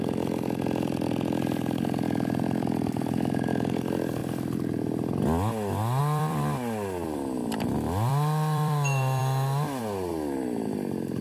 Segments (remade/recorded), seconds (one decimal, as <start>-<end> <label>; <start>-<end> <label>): 0.0-4.2 remade; 4.2-6.0 recorded; 6.0-9.2 remade; 9.2-9.8 recorded; 9.8-11.2 remade

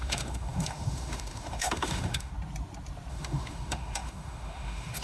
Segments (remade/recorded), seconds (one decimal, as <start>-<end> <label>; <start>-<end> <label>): 0.0-2.3 remade; 2.3-3.1 recorded; 3.1-5.0 remade

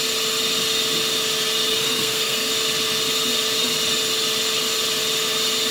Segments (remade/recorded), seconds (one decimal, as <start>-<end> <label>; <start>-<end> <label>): 0.0-1.7 recorded; 1.7-2.5 remade; 2.5-5.7 recorded

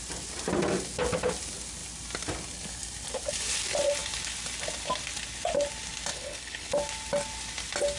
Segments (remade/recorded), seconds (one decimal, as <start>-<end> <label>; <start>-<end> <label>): 0.0-6.1 recorded; 6.1-6.7 remade; 6.7-8.0 recorded

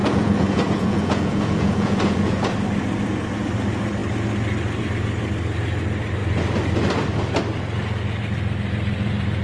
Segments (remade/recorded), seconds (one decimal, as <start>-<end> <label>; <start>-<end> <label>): 0.0-2.5 remade; 2.5-9.4 recorded

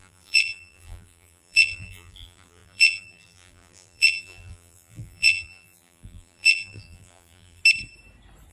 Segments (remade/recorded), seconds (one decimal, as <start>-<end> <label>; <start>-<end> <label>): 0.0-7.6 remade; 7.6-8.5 recorded

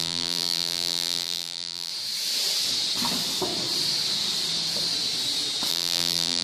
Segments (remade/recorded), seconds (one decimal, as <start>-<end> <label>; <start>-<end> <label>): 0.0-1.9 remade; 1.9-5.7 recorded; 5.7-6.4 remade

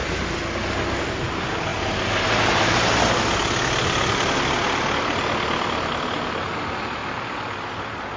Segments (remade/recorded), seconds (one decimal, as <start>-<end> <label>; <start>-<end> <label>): 0.0-8.2 recorded